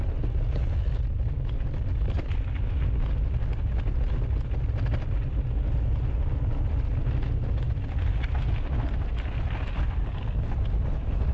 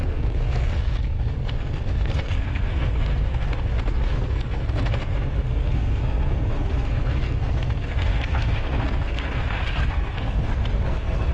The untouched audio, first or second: first